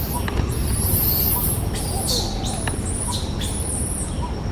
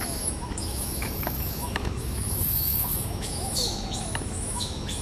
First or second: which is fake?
second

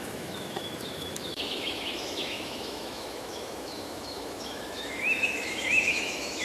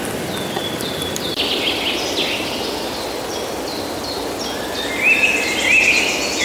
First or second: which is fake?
first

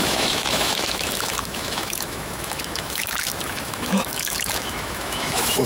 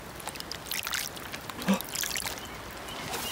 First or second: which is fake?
first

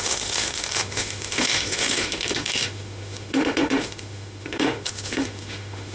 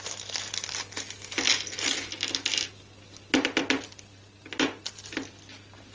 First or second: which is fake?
first